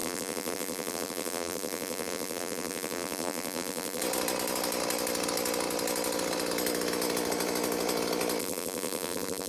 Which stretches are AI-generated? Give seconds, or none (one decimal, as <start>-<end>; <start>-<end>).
0.0-4.0; 8.4-9.5